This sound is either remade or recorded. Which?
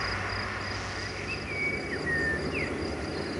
recorded